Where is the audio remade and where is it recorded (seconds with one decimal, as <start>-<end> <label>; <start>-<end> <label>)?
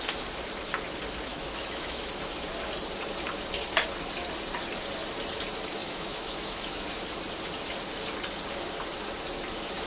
0.0-1.3 recorded; 1.3-2.1 remade; 2.1-5.8 recorded; 5.8-7.0 remade; 7.0-9.9 recorded